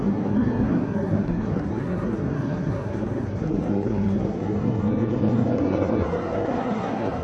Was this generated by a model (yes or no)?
yes